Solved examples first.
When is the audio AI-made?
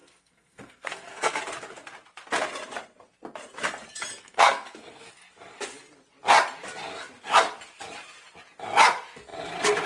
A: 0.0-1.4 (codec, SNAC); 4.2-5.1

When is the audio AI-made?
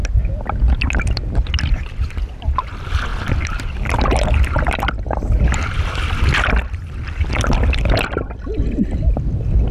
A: none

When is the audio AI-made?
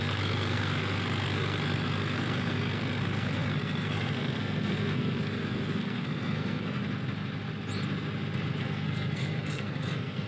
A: 0.0-6.8 (codec, SNAC); 8.6-10.3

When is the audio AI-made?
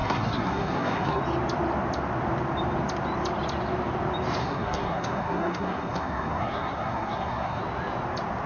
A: 0.0-1.2 (codec, SNAC); 4.4-7.6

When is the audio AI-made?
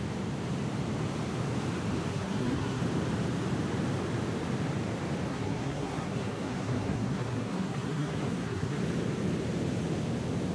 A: 2.1-2.8 (codec, SNAC); 5.3-8.8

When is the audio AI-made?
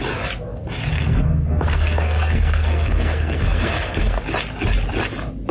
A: 0.9-4.2 (codec, SNAC)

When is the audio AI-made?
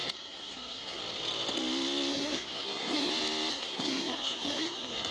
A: 0.0-1.0 (codec, SNAC); 2.1-3.1; 3.5-5.1